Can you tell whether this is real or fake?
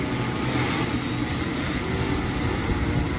real